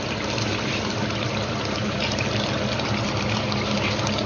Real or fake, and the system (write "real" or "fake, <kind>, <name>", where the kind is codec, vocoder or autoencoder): real